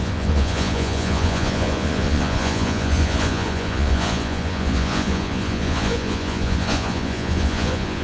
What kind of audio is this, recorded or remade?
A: remade